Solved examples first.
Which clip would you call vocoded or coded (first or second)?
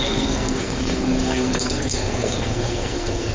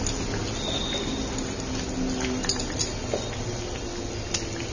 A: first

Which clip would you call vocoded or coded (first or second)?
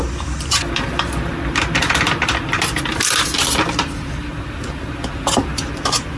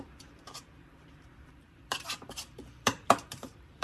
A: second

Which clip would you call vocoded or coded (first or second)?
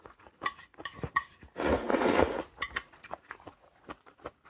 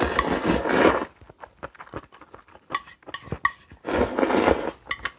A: first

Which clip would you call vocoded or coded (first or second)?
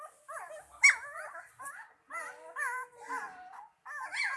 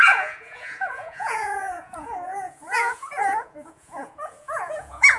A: second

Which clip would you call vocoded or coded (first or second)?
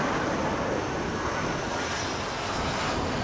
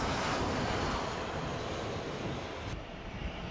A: second